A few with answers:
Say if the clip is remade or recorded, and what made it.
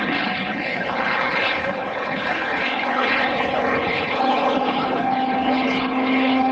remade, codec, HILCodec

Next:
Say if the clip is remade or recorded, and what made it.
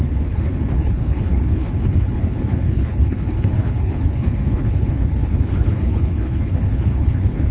remade, codec, HILCodec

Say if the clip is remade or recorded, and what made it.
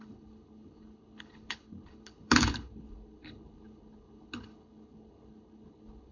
remade, codec, HILCodec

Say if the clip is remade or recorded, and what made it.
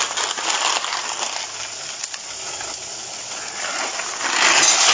recorded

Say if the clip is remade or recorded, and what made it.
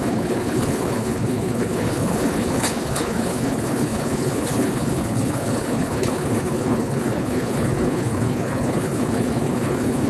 remade, codec, HILCodec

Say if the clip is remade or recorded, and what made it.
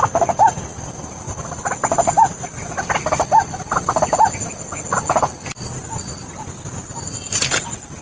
recorded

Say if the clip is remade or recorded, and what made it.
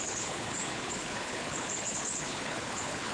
remade, codec, HILCodec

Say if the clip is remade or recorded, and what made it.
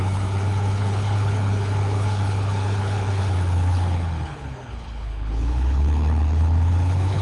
remade, codec, HILCodec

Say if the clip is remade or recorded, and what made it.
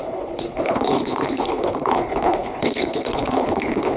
remade, codec, HILCodec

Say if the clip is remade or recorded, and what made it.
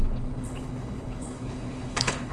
remade, codec, HILCodec